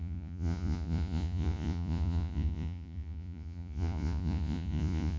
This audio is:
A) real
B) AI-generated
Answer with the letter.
B